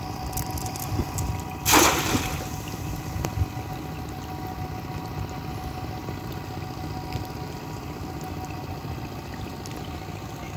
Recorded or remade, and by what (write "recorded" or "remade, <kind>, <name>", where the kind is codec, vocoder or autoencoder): recorded